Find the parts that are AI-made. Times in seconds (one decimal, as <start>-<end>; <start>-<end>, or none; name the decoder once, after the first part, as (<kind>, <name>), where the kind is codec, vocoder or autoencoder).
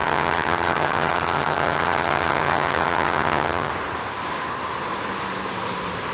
0.0-3.7 (vocoder, HiFi-GAN)